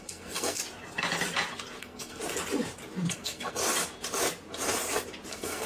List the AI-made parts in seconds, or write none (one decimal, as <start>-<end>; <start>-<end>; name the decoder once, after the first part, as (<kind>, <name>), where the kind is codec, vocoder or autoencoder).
0.0-0.6 (codec, SNAC); 1.8-2.2; 3.1-3.6; 5.3-5.7